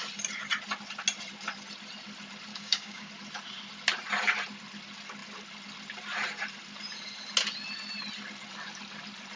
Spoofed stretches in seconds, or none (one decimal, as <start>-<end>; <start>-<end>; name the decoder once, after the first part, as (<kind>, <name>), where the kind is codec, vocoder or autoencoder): 2.5-3.1 (codec, DAC)